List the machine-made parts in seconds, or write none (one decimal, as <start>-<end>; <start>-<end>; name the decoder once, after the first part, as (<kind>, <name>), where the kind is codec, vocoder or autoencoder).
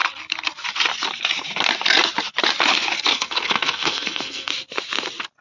3.1-4.5 (codec, SNAC)